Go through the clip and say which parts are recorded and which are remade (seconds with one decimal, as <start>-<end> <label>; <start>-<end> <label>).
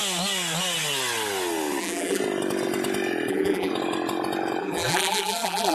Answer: 0.0-1.8 recorded; 1.8-2.2 remade; 2.2-3.3 recorded; 3.3-3.7 remade; 3.7-4.6 recorded; 4.6-5.7 remade